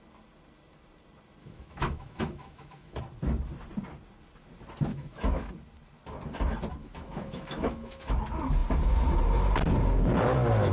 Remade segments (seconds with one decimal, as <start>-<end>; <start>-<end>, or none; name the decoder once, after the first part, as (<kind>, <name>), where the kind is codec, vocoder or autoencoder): 1.4-3.0 (autoencoder, DAC-VAE); 4.9-5.5; 6.8-8.1

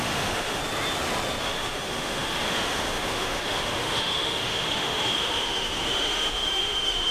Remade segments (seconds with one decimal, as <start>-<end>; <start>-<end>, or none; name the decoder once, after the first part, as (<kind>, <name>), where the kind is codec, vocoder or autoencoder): 0.0-0.6 (autoencoder, DAC-VAE); 1.4-7.1